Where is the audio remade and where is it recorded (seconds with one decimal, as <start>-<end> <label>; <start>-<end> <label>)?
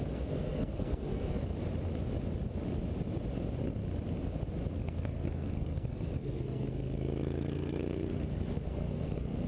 0.0-1.4 remade; 1.4-4.7 recorded; 4.7-9.5 remade